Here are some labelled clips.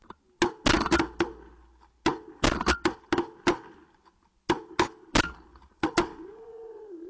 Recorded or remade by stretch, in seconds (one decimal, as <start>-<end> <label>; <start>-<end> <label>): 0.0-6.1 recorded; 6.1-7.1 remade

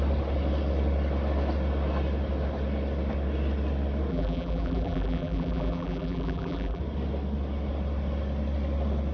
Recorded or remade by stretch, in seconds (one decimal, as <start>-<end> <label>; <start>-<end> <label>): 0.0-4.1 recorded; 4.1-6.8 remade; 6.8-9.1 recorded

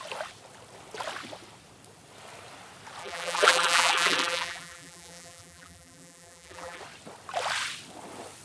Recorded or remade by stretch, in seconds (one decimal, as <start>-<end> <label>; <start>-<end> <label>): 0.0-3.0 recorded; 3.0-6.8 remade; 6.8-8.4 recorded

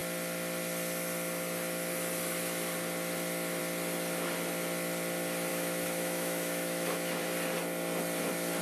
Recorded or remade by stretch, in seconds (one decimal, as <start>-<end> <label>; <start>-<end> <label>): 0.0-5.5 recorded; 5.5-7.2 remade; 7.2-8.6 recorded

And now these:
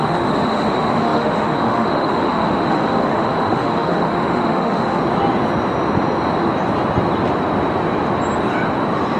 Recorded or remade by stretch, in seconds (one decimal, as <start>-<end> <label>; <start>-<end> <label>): 0.0-5.0 remade; 5.0-9.2 recorded